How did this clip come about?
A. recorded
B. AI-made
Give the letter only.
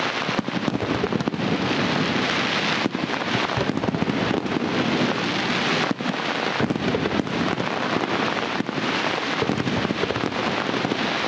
A